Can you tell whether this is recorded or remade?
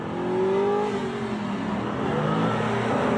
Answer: recorded